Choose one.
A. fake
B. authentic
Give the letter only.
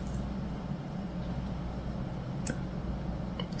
B